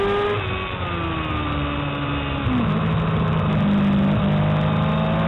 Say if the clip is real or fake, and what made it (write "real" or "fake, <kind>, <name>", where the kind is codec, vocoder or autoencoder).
real